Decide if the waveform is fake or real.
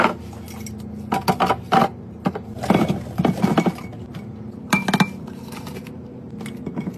real